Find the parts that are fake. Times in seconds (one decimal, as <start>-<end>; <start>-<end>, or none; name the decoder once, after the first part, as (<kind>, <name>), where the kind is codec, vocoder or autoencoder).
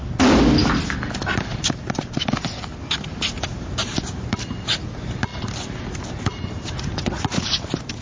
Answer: none